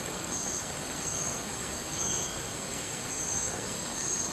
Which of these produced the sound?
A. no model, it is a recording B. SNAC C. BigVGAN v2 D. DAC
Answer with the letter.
B